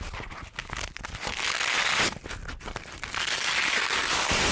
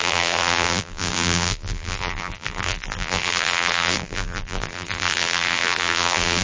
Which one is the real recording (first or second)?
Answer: first